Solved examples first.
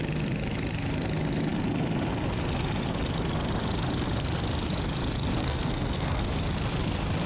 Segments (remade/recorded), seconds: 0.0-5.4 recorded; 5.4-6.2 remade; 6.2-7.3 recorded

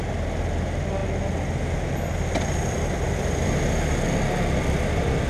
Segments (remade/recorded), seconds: 0.0-5.3 recorded

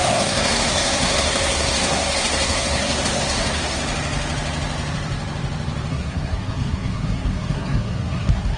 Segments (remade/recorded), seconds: 0.0-3.8 remade; 3.8-5.9 recorded; 5.9-8.6 remade

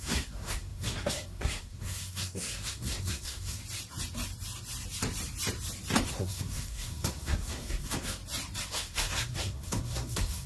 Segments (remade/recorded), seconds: 0.0-3.6 remade; 3.6-6.1 recorded; 6.1-8.2 remade; 8.2-8.7 recorded; 8.7-10.5 remade

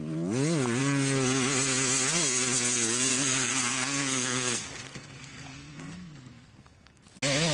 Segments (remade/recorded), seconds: 0.0-3.1 recorded; 3.1-7.0 remade; 7.0-7.5 recorded

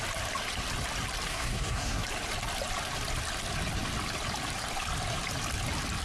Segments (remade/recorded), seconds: 0.0-1.3 recorded; 1.3-2.0 remade; 2.0-6.0 recorded

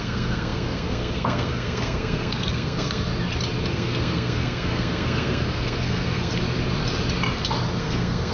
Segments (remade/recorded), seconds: 0.0-3.1 remade; 3.1-3.7 recorded; 3.7-6.3 remade; 6.3-7.8 recorded; 7.8-8.3 remade